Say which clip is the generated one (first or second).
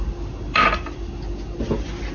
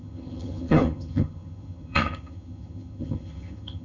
second